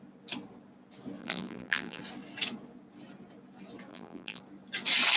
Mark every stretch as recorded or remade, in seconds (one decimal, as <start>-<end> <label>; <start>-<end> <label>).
0.0-1.2 recorded; 1.2-2.0 remade; 2.0-3.9 recorded; 3.9-4.4 remade; 4.4-5.2 recorded